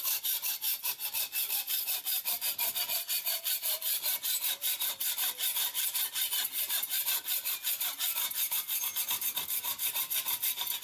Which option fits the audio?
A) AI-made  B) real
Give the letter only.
A